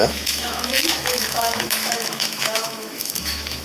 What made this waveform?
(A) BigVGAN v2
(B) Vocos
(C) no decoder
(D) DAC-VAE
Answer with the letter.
D